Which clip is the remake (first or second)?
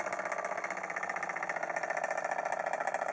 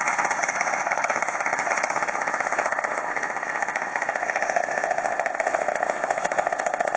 second